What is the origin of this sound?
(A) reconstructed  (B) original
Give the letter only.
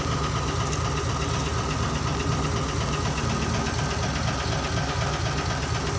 B